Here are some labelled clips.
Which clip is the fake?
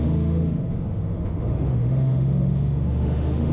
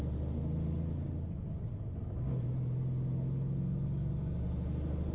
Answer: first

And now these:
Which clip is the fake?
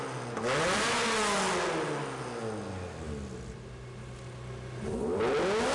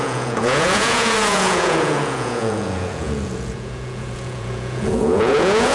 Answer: second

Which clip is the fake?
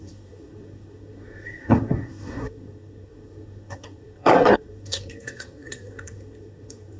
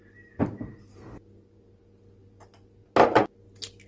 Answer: first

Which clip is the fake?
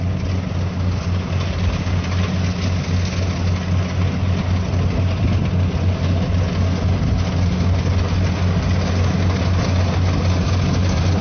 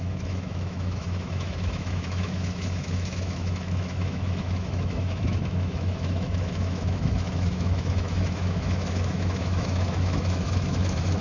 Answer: second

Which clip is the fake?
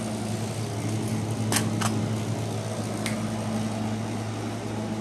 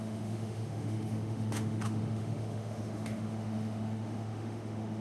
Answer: second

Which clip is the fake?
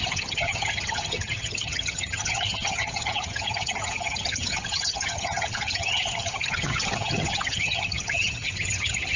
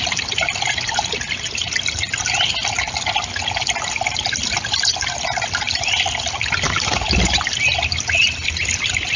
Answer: first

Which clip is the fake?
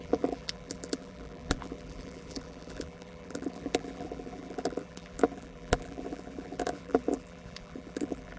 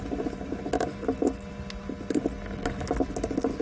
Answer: first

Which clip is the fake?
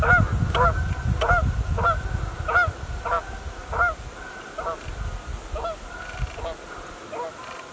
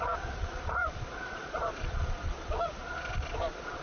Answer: second